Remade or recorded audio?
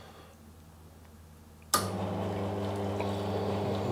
recorded